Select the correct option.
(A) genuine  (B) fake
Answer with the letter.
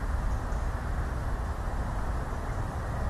B